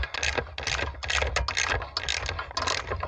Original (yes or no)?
yes